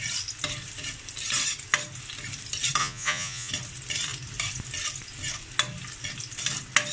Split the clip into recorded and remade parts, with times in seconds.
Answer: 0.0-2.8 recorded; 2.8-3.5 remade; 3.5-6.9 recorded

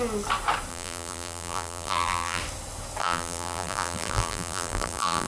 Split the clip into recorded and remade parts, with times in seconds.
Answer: 0.0-0.7 recorded; 0.7-2.4 remade; 2.4-3.0 recorded; 3.0-5.3 remade

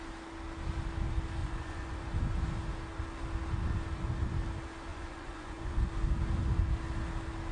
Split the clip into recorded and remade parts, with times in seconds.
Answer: 0.0-1.4 recorded; 1.4-2.0 remade; 2.0-4.9 recorded; 4.9-5.9 remade; 5.9-7.5 recorded

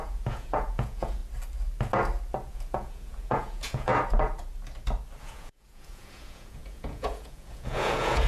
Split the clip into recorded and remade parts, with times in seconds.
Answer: 0.0-1.2 remade; 1.2-2.5 recorded; 2.5-3.9 remade; 3.9-5.2 recorded; 5.2-8.3 remade

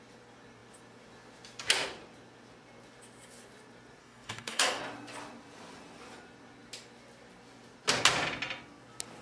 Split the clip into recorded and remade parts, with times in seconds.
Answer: 0.0-4.0 recorded; 4.0-4.8 remade; 4.8-9.2 recorded

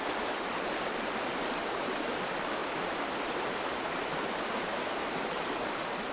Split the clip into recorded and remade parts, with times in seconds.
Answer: 0.0-4.7 recorded; 4.7-5.4 remade; 5.4-6.1 recorded